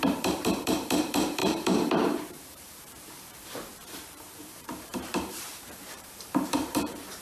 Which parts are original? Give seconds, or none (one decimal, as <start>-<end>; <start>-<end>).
none

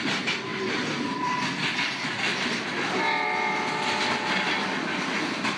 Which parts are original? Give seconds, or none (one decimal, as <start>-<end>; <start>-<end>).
0.0-0.5; 1.3-2.3; 3.9-5.6

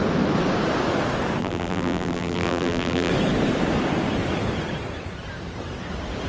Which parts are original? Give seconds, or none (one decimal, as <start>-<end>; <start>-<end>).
0.0-1.4; 3.1-6.3

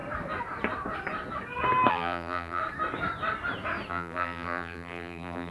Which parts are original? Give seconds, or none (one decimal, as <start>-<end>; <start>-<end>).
0.0-1.9; 2.6-3.9

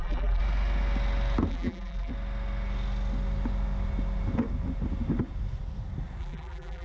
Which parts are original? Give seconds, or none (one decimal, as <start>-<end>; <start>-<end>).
0.4-1.5; 2.1-6.2

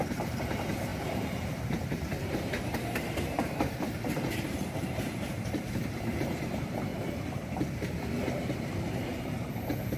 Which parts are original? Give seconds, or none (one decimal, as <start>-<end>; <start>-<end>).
6.9-8.0; 9.1-10.0

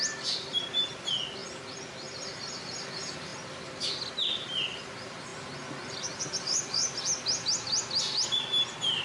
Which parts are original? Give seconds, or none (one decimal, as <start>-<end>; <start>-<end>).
0.0-9.0

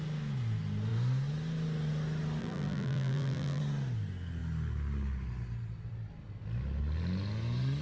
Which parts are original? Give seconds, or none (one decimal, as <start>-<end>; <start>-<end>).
0.0-2.4; 3.6-7.8